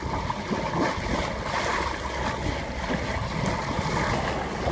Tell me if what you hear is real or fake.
real